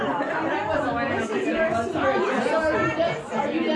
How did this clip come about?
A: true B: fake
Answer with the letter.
A